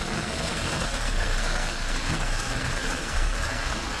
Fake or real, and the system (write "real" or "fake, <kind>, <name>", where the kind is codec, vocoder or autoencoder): fake, codec, SNAC